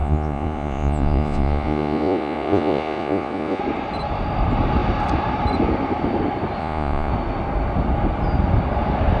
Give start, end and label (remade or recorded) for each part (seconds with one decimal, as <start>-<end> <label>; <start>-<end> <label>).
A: 0.0-3.6 remade; 3.6-6.6 recorded; 6.6-7.1 remade; 7.1-9.2 recorded